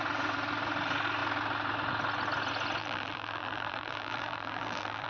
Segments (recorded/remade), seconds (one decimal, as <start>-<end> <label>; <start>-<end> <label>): 0.0-2.8 recorded; 2.8-5.1 remade